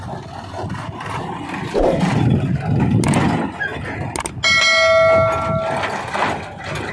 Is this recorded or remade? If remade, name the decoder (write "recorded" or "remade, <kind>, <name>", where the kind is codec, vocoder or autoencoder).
recorded